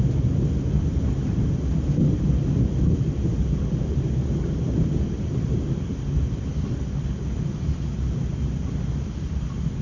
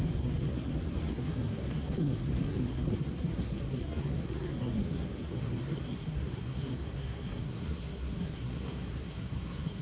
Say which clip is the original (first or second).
first